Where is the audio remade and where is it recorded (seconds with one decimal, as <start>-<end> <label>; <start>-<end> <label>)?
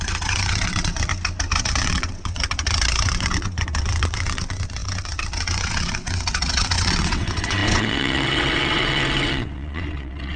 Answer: 0.0-1.1 remade; 1.1-1.6 recorded; 1.6-10.4 remade